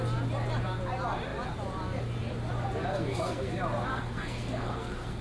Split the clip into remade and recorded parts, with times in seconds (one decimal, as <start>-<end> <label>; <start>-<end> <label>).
0.0-2.9 recorded; 2.9-3.5 remade; 3.5-3.9 recorded; 3.9-5.2 remade